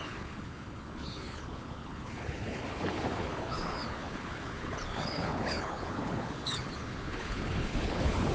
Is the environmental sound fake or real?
fake